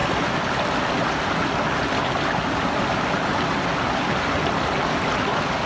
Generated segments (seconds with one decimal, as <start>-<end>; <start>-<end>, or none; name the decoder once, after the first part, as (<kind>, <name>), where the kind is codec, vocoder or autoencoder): none